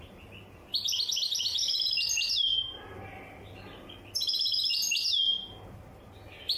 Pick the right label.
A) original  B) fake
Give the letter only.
A